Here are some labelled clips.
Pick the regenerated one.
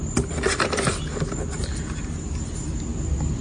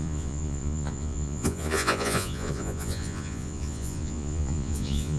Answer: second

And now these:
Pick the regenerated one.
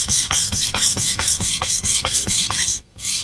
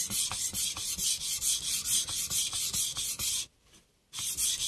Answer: first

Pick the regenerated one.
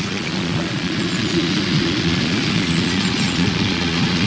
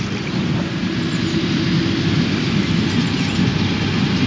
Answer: first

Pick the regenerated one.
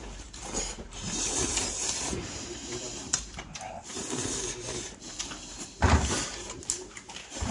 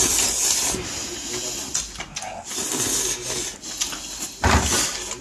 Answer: first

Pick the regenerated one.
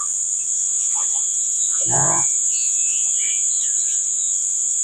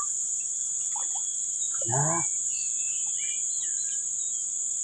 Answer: first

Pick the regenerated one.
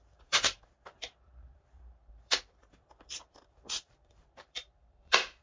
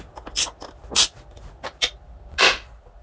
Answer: first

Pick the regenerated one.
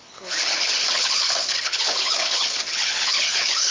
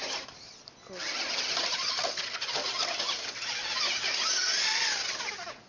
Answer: first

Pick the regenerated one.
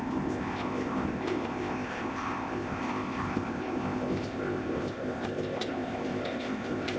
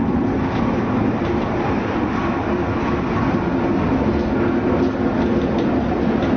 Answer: first